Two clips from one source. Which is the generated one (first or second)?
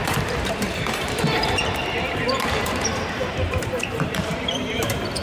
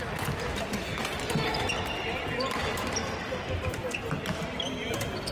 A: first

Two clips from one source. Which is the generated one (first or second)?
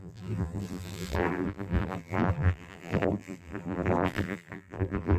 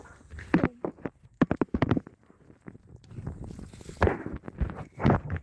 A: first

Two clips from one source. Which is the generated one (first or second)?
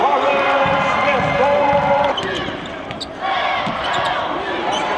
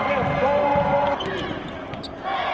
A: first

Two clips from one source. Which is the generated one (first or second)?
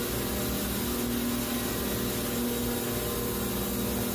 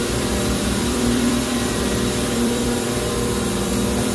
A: second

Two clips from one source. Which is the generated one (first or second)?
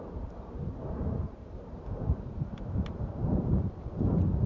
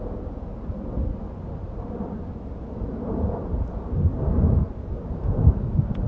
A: first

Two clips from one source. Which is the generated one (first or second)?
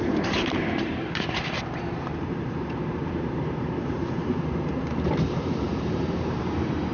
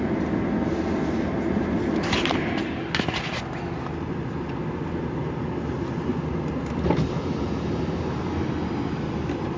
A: first